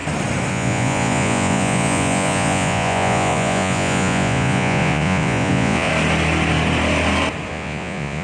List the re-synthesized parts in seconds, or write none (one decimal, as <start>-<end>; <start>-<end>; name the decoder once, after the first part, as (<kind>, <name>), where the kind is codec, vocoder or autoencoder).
0.5-5.9 (vocoder, Vocos); 7.5-8.2

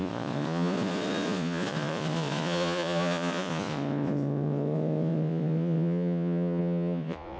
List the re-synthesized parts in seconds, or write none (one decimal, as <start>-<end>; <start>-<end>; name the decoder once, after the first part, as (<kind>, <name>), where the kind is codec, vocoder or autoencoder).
0.0-7.4 (vocoder, Vocos)

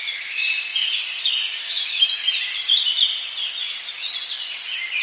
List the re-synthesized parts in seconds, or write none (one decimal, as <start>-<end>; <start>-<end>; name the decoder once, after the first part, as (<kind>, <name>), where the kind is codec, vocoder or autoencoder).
none

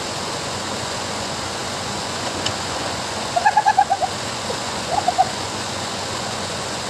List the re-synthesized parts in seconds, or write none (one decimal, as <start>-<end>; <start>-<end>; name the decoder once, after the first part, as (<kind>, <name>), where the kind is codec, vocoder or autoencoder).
0.0-6.9 (vocoder, Vocos)